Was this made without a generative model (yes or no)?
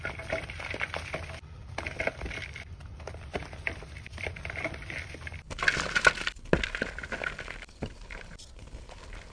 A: yes